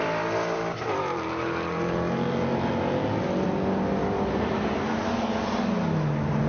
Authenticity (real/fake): real